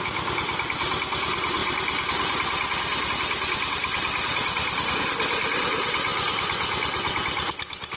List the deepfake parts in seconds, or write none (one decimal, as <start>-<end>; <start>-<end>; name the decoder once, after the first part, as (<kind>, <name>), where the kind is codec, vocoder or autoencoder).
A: 6.1-7.2 (vocoder, BigVGAN v2)